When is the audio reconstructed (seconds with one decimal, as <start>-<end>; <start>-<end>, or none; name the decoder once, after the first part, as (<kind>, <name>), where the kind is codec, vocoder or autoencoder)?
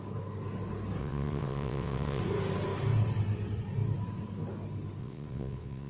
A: 1.0-2.2 (vocoder, WaveNeXt); 5.0-5.9